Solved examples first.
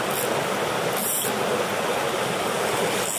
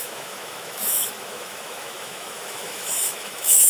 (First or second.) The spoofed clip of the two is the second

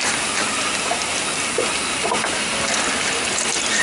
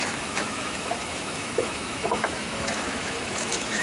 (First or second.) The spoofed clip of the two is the second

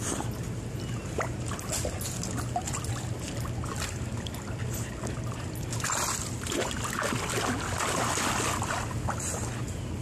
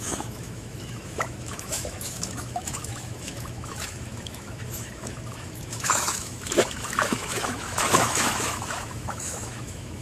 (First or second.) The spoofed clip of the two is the second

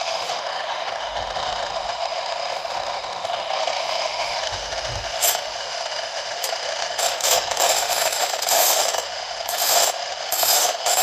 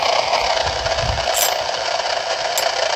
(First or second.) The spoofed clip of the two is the first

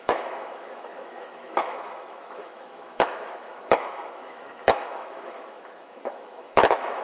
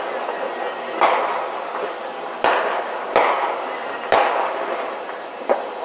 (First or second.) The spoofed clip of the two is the first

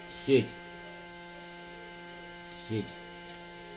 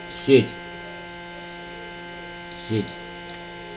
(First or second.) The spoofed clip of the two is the first